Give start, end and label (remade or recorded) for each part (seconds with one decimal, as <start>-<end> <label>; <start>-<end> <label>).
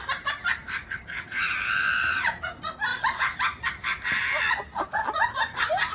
0.0-0.6 recorded; 0.6-2.4 remade; 2.4-2.9 recorded; 2.9-4.4 remade; 4.4-5.9 recorded